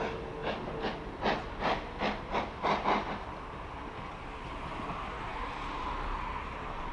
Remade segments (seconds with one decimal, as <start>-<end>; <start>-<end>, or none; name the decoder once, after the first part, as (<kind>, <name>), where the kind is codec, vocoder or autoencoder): 5.3-5.9 (vocoder, BigVGAN v2)